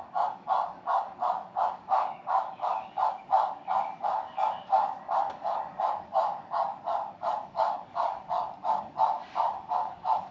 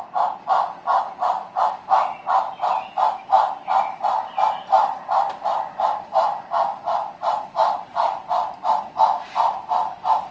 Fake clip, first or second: first